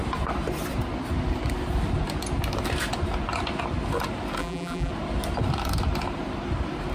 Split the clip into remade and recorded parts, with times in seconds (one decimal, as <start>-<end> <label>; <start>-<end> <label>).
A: 0.0-4.4 recorded; 4.4-4.9 remade; 4.9-6.9 recorded